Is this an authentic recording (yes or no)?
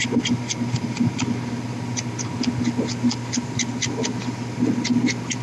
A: yes